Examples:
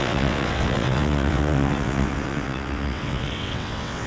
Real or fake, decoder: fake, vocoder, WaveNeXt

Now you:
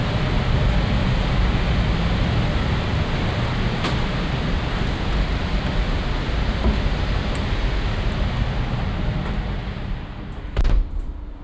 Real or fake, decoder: real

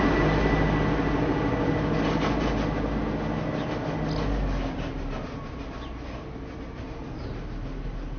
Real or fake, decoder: real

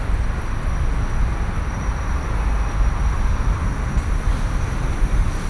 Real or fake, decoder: real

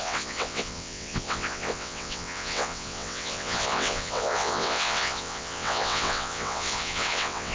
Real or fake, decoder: fake, vocoder, WaveNeXt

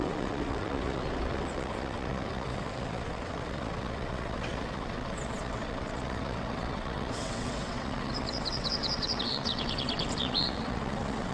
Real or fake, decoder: fake, vocoder, WaveNeXt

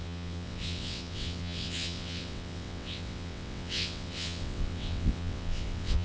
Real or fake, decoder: fake, vocoder, WaveNeXt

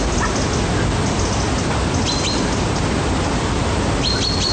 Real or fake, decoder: real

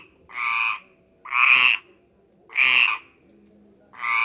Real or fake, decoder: real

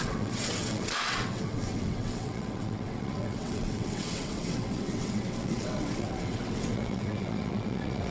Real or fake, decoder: fake, vocoder, WaveNeXt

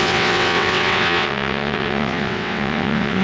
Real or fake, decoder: fake, vocoder, WaveNeXt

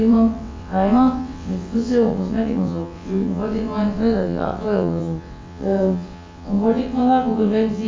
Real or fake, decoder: fake, vocoder, WaveNeXt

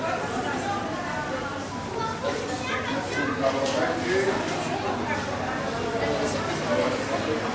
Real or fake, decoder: real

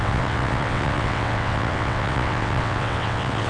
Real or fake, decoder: fake, vocoder, WaveNeXt